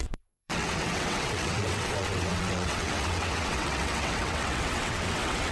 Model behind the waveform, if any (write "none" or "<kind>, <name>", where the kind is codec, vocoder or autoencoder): vocoder, WaveNeXt